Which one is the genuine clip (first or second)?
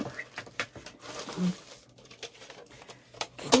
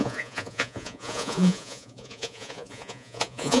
first